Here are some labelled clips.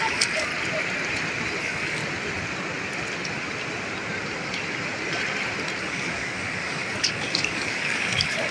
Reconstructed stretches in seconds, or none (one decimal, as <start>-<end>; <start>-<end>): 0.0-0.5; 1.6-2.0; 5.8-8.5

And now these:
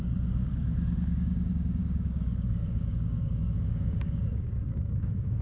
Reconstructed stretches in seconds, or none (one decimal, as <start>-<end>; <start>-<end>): 0.0-5.4

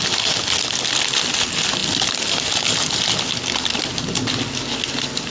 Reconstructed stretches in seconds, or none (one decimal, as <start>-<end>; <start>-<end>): none

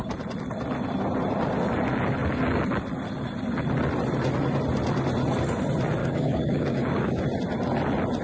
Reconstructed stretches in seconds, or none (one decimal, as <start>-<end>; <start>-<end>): 6.0-7.2

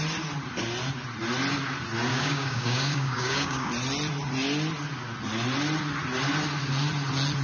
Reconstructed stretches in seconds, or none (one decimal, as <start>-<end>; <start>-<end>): 2.1-3.7

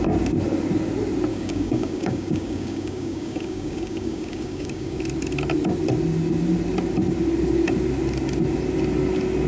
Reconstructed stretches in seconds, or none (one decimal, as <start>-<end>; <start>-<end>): 1.3-5.0